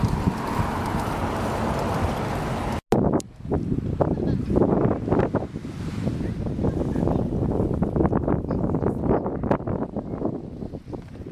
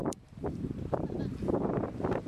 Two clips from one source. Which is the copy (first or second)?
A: second